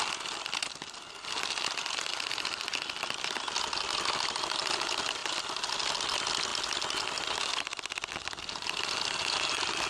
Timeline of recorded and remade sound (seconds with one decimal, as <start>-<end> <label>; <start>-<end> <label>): 0.0-9.9 recorded